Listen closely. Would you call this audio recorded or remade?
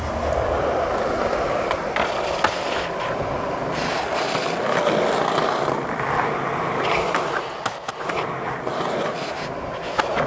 recorded